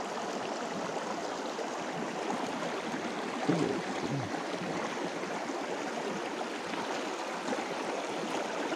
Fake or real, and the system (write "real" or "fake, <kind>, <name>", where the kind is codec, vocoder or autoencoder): real